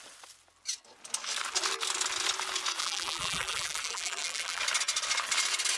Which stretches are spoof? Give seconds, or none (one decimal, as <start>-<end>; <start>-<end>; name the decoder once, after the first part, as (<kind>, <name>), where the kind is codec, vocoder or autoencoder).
2.8-4.6 (vocoder, BigVGAN v2)